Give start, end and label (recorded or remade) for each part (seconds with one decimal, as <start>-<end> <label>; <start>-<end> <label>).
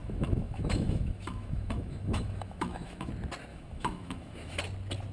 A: 0.0-3.1 remade; 3.1-3.5 recorded; 3.5-4.6 remade; 4.6-5.1 recorded